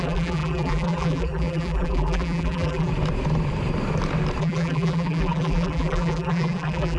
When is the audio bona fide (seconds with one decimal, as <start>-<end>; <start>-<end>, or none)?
2.9-4.4